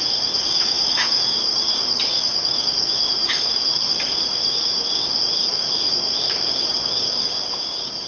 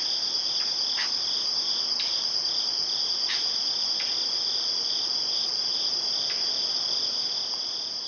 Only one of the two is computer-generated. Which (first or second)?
first